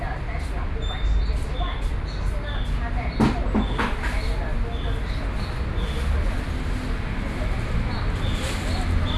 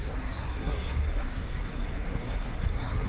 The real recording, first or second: first